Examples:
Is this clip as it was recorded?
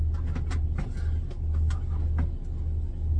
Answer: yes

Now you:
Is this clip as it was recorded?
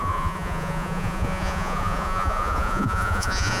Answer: no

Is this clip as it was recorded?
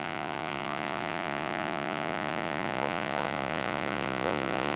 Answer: no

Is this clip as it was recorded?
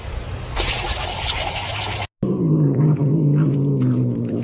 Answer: yes